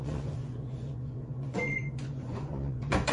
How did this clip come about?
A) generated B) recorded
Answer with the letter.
A